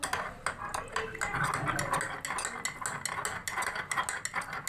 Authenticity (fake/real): real